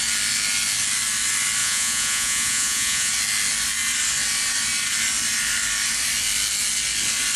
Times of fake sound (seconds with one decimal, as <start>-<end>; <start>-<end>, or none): 1.6-3.1

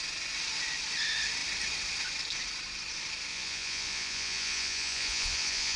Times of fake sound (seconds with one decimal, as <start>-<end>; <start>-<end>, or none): 3.3-5.8